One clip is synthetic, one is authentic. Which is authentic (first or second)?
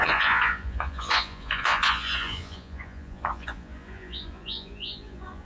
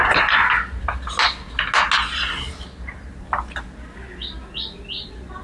second